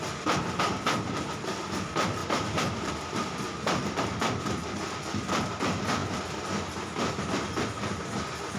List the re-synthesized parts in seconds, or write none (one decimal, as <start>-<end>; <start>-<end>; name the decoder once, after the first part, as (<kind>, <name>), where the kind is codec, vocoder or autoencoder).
2.2-4.0 (vocoder, BigVGAN v2)